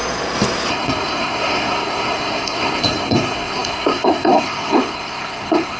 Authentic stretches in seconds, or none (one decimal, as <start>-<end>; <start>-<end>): 0.0-0.7